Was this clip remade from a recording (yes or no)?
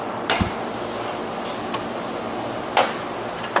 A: no